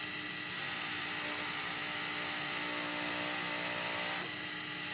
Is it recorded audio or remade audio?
recorded